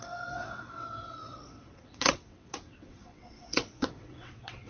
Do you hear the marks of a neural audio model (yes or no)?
yes